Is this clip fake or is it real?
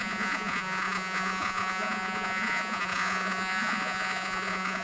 fake